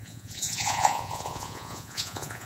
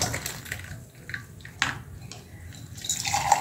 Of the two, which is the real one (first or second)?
second